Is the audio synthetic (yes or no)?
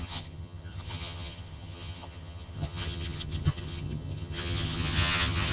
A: yes